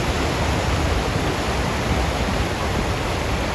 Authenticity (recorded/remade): recorded